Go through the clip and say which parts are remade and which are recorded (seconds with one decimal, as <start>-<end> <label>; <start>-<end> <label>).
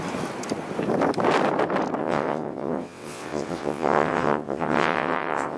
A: 0.0-2.0 recorded; 2.0-5.6 remade